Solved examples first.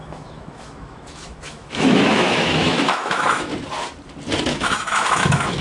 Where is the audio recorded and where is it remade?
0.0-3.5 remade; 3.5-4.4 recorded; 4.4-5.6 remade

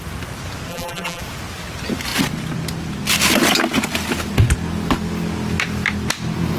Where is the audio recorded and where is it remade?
0.0-0.7 recorded; 0.7-1.2 remade; 1.2-6.6 recorded

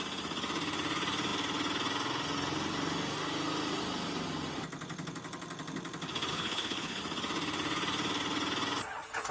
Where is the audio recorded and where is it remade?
0.0-6.3 recorded; 6.3-7.0 remade; 7.0-9.3 recorded

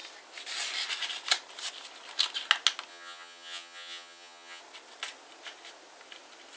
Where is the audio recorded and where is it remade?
0.0-2.9 recorded; 2.9-4.6 remade; 4.6-6.6 recorded

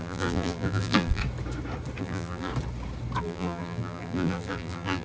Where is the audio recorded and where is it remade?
0.0-1.2 remade; 1.2-2.0 recorded; 2.0-2.5 remade; 2.5-3.2 recorded; 3.2-5.0 remade

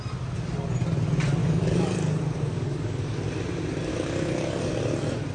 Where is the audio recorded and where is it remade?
0.0-1.4 recorded; 1.4-3.2 remade; 3.2-3.9 recorded; 3.9-4.7 remade; 4.7-5.3 recorded

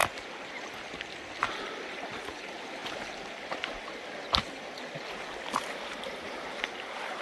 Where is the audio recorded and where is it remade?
0.0-1.4 recorded; 1.4-2.8 remade; 2.8-5.6 recorded; 5.6-7.2 remade

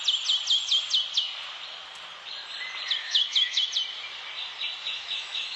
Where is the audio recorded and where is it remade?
0.0-3.0 recorded; 3.0-3.7 remade; 3.7-4.8 recorded; 4.8-5.6 remade